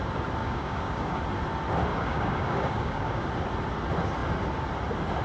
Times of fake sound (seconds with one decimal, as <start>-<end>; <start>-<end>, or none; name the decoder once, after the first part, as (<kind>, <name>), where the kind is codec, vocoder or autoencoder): 0.4-1.2 (codec, DAC); 1.9-3.3